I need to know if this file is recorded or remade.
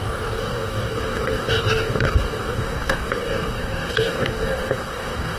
remade